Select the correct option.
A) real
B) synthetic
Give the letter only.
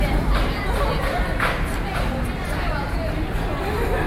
A